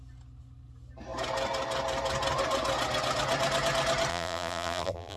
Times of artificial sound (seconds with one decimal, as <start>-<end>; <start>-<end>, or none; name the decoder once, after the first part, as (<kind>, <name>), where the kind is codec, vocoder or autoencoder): 4.1-5.2 (vocoder, BigVGAN v2)